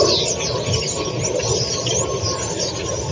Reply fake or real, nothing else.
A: real